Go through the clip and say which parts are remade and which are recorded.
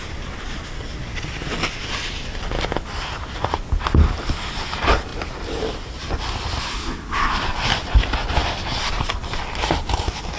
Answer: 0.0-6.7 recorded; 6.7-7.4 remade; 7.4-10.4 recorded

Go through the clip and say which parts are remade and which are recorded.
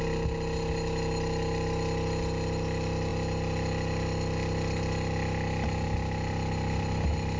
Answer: 0.0-7.4 recorded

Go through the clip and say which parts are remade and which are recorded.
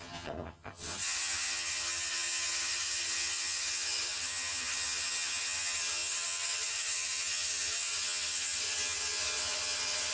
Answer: 0.0-10.1 remade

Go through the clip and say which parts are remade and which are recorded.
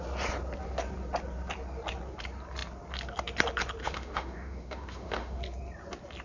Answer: 0.0-3.8 recorded; 3.8-5.4 remade; 5.4-6.2 recorded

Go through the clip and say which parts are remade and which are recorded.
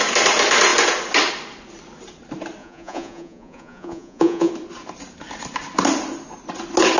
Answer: 0.0-2.6 recorded; 2.6-4.5 remade; 4.5-7.0 recorded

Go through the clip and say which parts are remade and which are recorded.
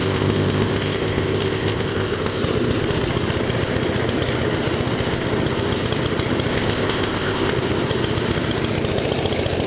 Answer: 0.0-2.4 remade; 2.4-6.5 recorded; 6.5-7.5 remade; 7.5-9.7 recorded